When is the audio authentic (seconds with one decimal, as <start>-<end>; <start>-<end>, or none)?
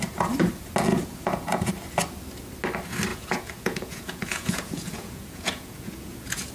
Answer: 0.0-0.9; 1.7-3.1